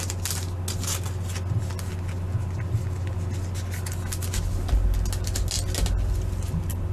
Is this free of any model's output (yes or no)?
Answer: yes